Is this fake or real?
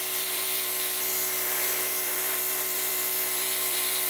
fake